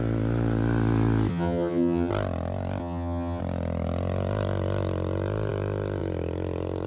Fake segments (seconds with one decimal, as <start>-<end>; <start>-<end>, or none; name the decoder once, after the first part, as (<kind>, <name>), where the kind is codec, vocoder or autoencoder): 1.3-2.1 (vocoder, HiFi-GAN); 2.8-3.4

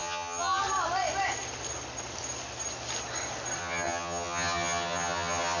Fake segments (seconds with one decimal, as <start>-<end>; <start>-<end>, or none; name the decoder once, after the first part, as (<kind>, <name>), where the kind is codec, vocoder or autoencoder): 0.0-0.6 (vocoder, HiFi-GAN); 3.6-5.6

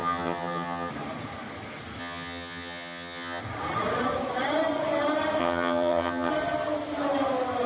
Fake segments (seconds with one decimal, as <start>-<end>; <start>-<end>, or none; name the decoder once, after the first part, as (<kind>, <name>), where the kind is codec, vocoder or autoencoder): 0.0-0.9 (vocoder, HiFi-GAN); 2.0-3.4; 5.4-6.3